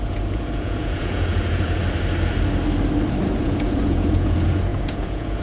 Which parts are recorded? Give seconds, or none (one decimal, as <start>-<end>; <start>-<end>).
1.8-3.3